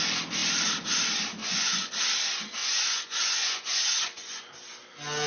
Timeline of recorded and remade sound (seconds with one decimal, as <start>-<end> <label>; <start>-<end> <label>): 0.0-1.4 recorded; 1.4-1.9 remade; 1.9-2.6 recorded; 2.6-4.5 remade; 4.5-5.3 recorded